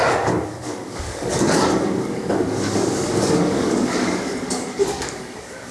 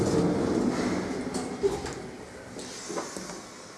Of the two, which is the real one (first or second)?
second